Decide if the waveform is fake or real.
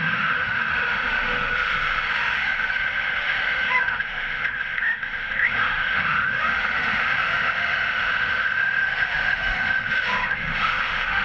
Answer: fake